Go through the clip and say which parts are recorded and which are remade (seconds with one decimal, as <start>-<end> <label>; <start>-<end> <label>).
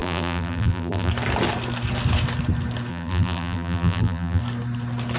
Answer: 0.0-1.1 remade; 1.1-2.9 recorded; 2.9-4.4 remade; 4.4-5.2 recorded